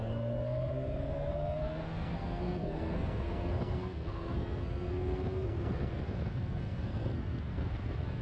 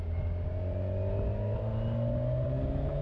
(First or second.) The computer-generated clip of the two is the first